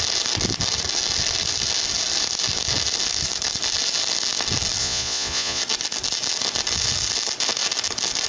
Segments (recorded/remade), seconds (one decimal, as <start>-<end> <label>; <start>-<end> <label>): 0.0-4.8 recorded; 4.8-5.6 remade; 5.6-8.3 recorded